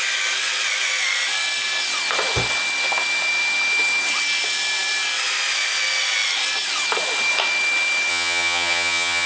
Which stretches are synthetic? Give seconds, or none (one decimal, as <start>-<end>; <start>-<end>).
8.1-9.3